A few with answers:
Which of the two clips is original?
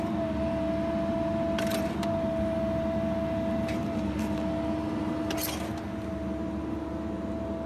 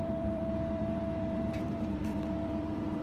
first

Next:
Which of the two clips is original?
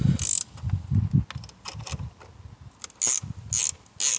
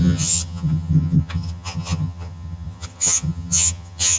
first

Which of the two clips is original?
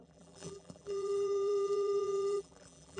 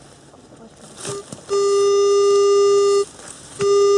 second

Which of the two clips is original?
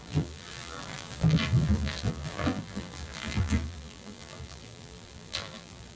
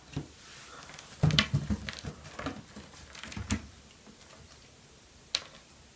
second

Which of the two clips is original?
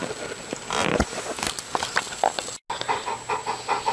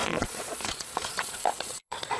first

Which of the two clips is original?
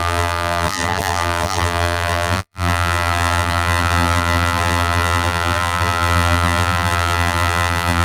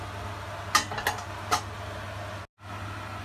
second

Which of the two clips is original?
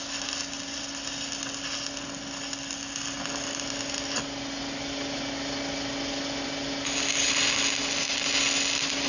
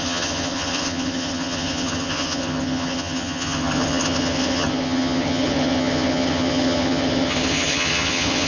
first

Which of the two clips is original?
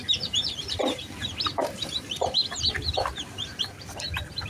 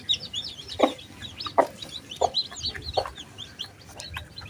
second